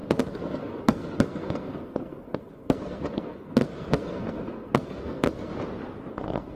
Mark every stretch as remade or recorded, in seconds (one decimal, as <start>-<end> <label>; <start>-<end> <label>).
0.0-5.5 remade; 5.5-6.1 recorded; 6.1-6.6 remade